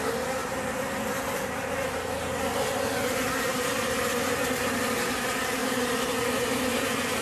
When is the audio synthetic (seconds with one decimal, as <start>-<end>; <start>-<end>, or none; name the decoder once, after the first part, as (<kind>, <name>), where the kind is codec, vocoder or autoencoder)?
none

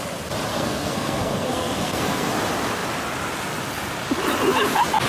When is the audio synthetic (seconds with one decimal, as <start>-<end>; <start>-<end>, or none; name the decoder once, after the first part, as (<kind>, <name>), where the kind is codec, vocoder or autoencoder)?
0.5-2.3 (codec, SNAC)

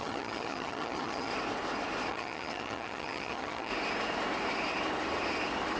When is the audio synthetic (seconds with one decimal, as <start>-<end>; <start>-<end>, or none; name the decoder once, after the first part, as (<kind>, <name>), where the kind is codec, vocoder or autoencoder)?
0.0-1.3 (vocoder, HiFi-GAN); 2.1-3.7

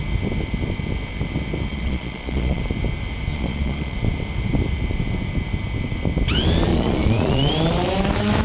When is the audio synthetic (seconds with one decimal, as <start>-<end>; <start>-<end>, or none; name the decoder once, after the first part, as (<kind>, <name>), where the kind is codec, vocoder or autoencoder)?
1.7-2.6 (vocoder, Vocos); 3.3-3.9; 6.7-7.5

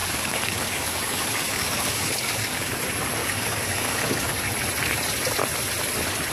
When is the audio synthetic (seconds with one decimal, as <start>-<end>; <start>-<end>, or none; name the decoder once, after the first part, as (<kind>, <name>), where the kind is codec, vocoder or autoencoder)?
0.0-2.8 (codec, DAC); 3.2-4.4

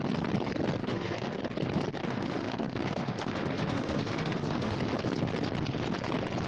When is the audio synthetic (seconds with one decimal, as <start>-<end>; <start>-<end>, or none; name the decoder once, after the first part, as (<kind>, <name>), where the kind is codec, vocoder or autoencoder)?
0.8-1.4 (autoencoder, DAC-VAE); 2.0-4.8

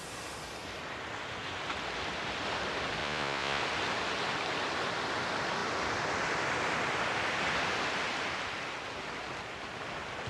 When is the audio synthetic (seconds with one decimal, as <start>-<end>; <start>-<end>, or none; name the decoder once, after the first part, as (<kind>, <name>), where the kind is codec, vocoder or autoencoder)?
3.0-3.6 (vocoder, Vocos)

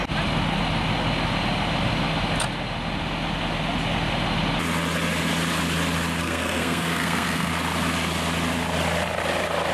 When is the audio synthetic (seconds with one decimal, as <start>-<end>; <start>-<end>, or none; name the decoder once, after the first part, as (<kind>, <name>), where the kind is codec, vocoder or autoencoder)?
6.2-7.5 (codec, SNAC)